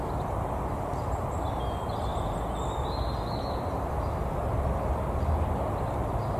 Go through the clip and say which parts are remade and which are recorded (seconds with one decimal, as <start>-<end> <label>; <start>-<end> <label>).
0.0-6.4 recorded